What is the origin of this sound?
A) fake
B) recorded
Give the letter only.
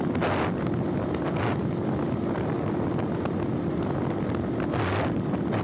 B